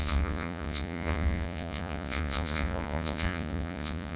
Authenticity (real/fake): fake